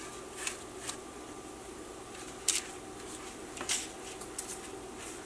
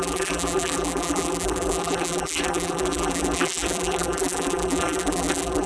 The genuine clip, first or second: first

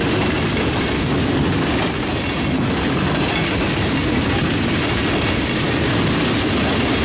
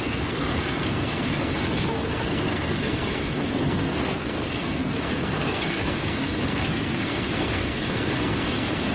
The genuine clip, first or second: first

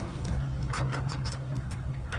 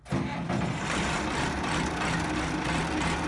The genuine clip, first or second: second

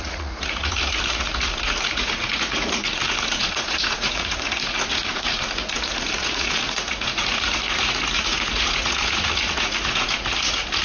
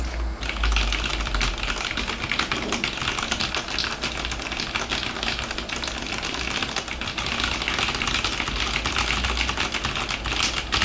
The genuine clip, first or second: second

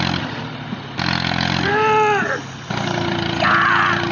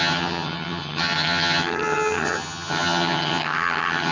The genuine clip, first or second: first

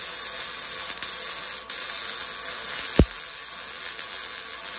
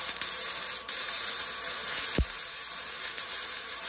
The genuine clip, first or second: first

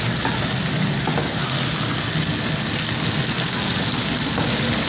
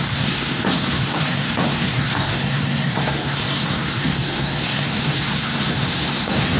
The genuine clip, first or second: first